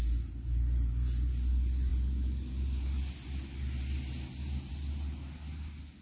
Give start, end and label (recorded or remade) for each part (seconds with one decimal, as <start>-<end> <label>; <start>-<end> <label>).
0.0-6.0 recorded